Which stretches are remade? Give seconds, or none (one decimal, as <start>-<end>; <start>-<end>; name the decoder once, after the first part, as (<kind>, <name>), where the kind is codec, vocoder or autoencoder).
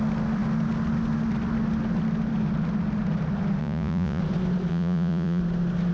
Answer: 3.6-4.2 (vocoder, Vocos); 4.7-5.4